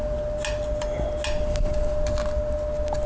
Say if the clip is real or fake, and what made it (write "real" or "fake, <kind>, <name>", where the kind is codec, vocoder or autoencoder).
real